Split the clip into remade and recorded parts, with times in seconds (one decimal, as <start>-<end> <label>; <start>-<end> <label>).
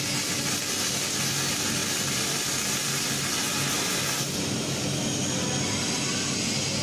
0.0-6.8 recorded